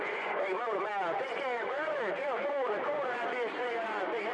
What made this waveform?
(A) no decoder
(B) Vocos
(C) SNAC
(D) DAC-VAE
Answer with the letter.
B